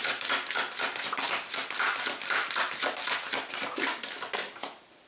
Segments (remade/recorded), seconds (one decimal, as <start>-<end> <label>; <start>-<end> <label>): 0.0-4.4 recorded; 4.4-5.1 remade